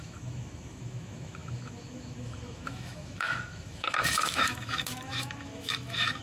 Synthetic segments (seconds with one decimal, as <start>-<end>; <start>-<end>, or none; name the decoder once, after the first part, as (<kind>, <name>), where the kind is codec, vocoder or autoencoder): 0.0-6.2 (autoencoder, DAC-VAE)